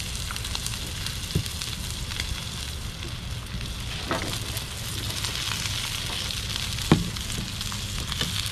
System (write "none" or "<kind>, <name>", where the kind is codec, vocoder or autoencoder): none